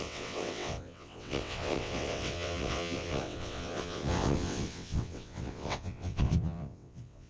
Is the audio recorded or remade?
remade